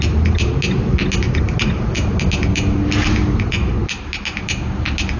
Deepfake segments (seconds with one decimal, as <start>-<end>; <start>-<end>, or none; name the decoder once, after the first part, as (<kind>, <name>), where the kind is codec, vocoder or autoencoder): none